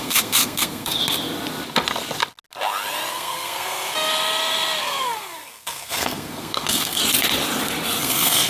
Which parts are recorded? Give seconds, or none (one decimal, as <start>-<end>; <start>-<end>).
1.0-3.1; 4.1-4.8; 7.0-8.0